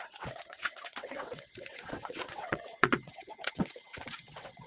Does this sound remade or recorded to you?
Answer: remade